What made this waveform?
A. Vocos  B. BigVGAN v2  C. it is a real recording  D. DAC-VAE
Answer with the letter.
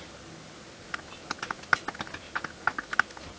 C